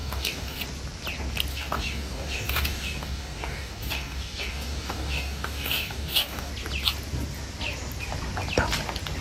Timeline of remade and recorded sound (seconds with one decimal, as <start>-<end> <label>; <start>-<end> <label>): 0.0-0.6 remade; 0.6-1.5 recorded; 1.5-6.5 remade; 6.5-9.2 recorded